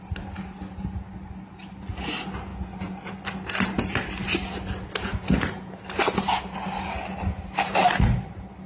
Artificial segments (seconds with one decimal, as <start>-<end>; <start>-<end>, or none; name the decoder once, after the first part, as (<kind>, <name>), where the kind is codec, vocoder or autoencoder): 2.5-3.1 (vocoder, Vocos); 5.1-5.7